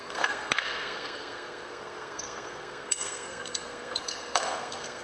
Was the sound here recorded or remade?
remade